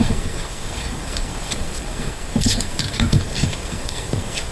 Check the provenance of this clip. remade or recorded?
remade